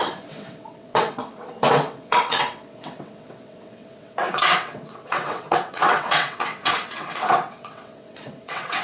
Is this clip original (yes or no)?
no